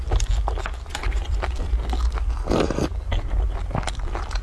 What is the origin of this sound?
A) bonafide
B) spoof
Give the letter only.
A